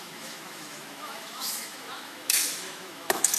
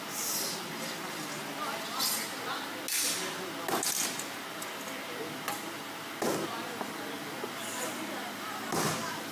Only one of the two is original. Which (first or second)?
second